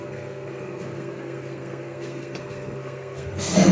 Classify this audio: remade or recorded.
remade